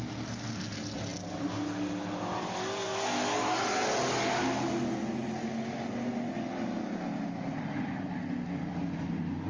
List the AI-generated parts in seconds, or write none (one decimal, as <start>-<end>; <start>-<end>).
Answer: none